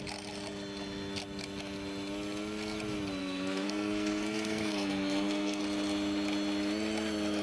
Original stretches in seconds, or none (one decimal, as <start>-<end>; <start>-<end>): 0.0-3.2; 5.6-7.4

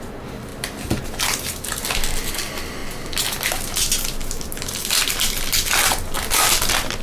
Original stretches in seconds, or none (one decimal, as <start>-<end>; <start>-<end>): 0.0-7.0